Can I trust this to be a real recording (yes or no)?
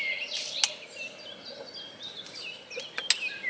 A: yes